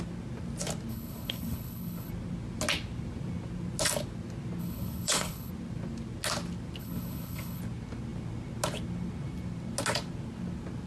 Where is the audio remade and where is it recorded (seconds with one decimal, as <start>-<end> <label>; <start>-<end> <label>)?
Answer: 0.0-0.9 recorded; 0.9-2.1 remade; 2.1-4.6 recorded; 4.6-5.5 remade; 5.5-6.8 recorded; 6.8-7.6 remade; 7.6-10.9 recorded